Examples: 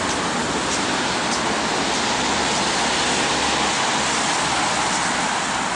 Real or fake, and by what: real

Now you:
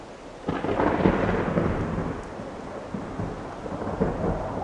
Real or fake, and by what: real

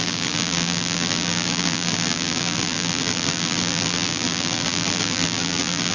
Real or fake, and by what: fake, vocoder, BigVGAN v2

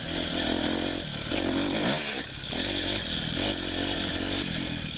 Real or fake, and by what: real